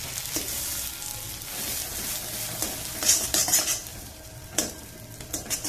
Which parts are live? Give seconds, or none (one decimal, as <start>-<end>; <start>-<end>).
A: 0.0-3.9; 4.8-5.7